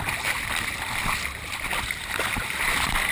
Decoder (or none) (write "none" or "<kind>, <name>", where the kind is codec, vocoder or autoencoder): none